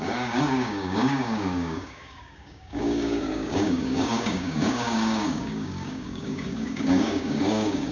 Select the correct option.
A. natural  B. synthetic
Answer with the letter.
B